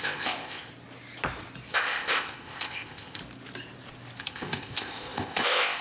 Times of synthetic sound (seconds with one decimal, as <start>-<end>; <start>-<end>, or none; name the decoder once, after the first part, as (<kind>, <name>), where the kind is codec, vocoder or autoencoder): 0.0-0.7 (codec, ZipCodec); 1.7-3.2; 4.2-5.8